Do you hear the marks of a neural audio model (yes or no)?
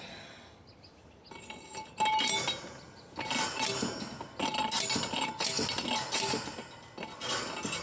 no